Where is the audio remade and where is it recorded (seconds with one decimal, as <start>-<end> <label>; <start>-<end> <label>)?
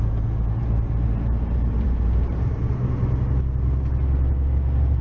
0.0-0.6 recorded; 0.6-2.6 remade; 2.6-5.0 recorded